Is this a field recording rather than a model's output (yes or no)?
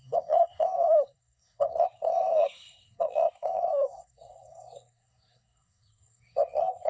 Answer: no